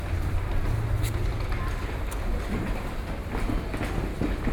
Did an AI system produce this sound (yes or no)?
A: no